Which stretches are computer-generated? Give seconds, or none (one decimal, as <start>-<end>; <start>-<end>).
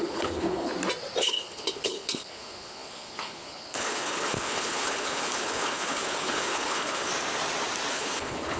0.0-0.7; 1.2-7.1; 7.9-8.6